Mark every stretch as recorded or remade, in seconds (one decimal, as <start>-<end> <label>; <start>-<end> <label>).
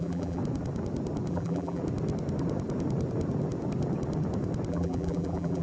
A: 0.0-0.4 remade; 0.4-1.3 recorded; 1.3-1.8 remade; 1.8-4.7 recorded; 4.7-5.6 remade